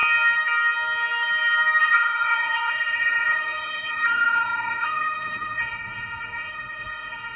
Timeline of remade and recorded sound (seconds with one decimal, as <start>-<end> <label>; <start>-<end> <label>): 0.0-1.8 recorded; 1.8-7.4 remade